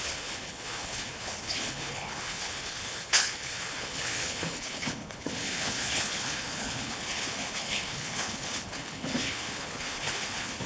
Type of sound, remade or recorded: remade